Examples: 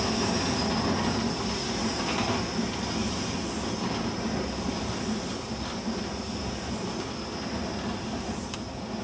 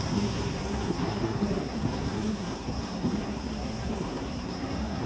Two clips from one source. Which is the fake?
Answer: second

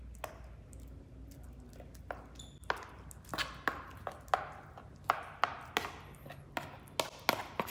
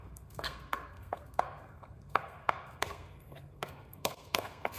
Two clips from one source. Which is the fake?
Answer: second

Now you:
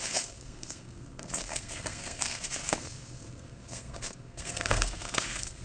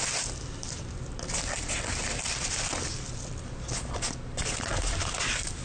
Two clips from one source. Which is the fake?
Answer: first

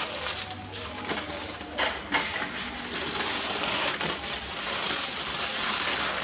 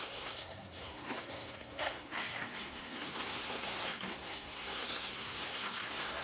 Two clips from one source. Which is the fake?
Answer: second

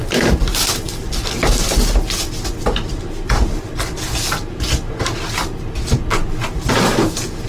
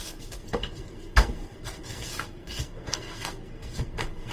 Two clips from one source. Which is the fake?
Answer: second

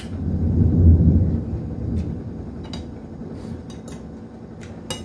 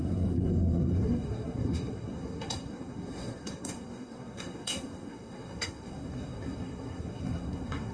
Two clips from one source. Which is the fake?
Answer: second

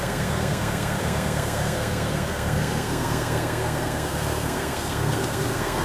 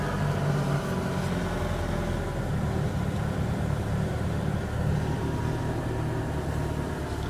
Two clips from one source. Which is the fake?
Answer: first